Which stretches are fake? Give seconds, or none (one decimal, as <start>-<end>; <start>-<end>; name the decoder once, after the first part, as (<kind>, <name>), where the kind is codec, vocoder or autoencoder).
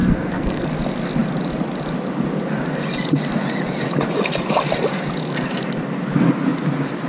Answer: 0.0-0.7 (codec, SNAC)